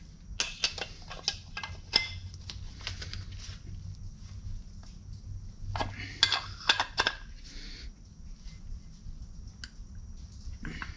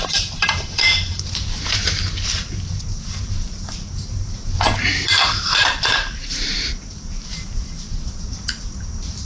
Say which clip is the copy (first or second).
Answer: second